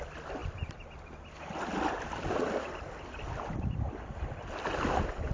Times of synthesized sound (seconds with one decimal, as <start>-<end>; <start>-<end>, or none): none